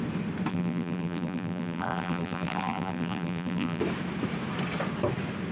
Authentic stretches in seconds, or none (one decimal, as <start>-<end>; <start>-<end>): 0.0-0.5; 3.8-5.5